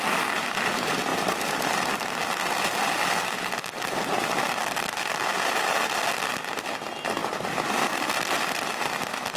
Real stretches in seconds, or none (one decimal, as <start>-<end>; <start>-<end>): 0.0-1.1; 1.9-7.2; 9.0-9.4